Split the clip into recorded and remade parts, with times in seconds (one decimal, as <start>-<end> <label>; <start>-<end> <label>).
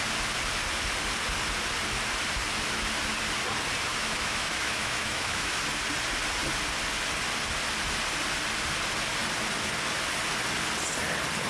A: 0.0-3.9 recorded; 3.9-5.6 remade; 5.6-11.5 recorded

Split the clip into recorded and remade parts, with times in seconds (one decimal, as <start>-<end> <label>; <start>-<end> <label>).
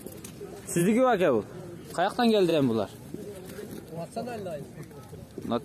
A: 0.0-5.6 recorded